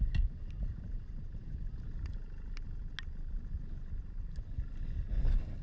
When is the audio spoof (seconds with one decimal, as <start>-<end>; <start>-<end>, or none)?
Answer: none